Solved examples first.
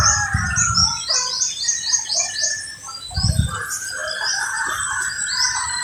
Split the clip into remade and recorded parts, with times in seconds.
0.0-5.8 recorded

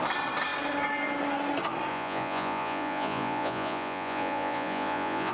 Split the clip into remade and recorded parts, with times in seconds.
0.0-1.9 recorded; 1.9-5.3 remade

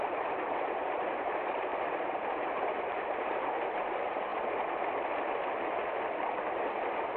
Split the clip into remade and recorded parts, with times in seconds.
0.0-1.7 remade; 1.7-2.9 recorded; 2.9-4.3 remade; 4.3-7.2 recorded

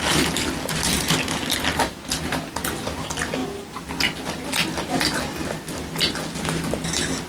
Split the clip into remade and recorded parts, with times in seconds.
0.0-7.3 recorded

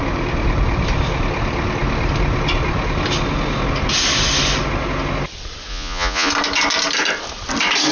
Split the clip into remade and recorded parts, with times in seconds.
0.0-5.7 recorded; 5.7-6.3 remade; 6.3-7.9 recorded

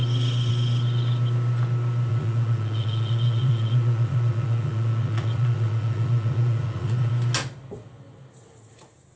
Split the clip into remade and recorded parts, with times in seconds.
0.0-2.1 recorded; 2.1-7.1 remade; 7.1-9.2 recorded

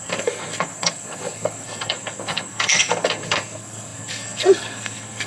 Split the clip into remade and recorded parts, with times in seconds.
0.0-5.3 remade

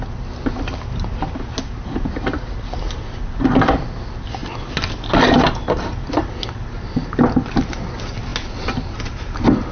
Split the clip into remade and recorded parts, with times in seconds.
0.0-9.7 recorded